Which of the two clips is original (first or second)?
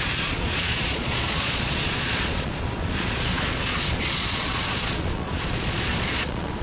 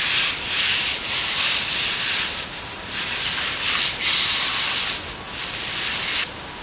second